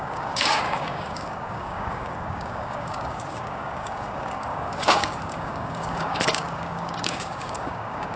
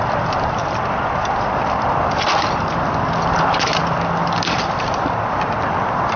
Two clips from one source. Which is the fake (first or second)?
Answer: first